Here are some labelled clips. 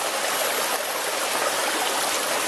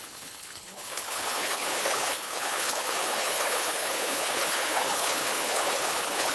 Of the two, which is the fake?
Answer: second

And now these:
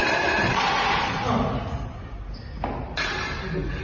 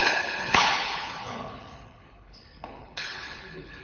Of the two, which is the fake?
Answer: second